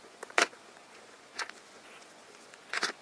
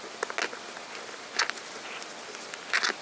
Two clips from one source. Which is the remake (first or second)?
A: first